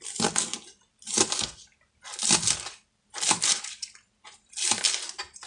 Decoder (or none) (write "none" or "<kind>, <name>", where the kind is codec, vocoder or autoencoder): none